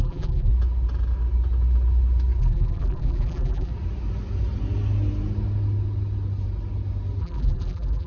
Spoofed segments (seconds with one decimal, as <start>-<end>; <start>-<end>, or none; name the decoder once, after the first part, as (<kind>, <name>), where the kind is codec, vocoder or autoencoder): 0.0-0.5 (vocoder, BigVGAN v2); 2.4-3.7; 7.2-8.1